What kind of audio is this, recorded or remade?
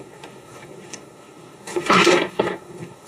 remade